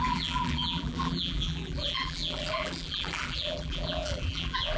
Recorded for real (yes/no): no